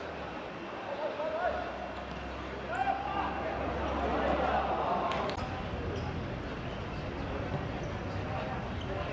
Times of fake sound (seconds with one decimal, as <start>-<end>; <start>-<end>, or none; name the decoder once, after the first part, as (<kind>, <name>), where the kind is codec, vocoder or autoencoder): none